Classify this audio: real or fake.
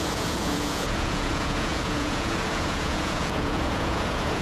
fake